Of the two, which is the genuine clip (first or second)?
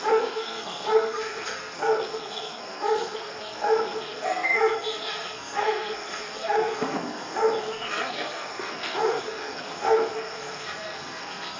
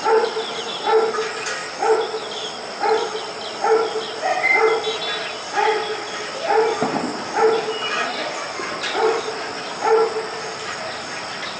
second